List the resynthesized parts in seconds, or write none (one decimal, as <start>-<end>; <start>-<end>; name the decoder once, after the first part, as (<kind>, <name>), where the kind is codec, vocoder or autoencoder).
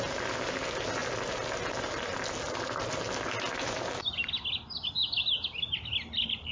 none